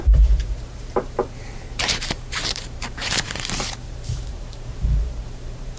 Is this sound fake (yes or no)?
yes